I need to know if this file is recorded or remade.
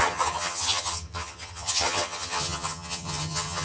remade